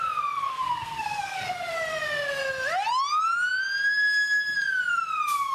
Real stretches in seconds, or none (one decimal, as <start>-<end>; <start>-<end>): 0.0-0.5; 1.7-5.5